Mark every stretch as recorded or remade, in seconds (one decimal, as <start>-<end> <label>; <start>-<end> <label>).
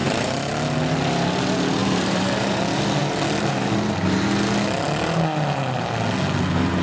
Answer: 0.0-0.5 remade; 0.5-1.8 recorded; 1.8-2.6 remade; 2.6-6.8 recorded